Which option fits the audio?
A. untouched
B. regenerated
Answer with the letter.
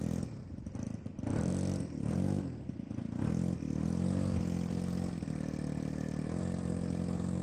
A